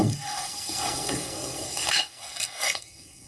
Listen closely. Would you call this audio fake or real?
fake